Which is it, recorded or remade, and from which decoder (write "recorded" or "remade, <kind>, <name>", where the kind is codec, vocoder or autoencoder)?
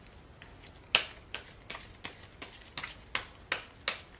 recorded